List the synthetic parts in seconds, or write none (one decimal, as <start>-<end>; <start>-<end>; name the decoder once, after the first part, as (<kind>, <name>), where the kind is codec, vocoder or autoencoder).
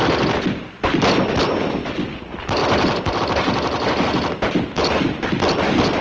2.6-3.2 (vocoder, BigVGAN v2)